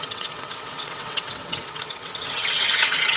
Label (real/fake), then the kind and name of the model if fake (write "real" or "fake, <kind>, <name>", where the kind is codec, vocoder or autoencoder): fake, vocoder, WaveNeXt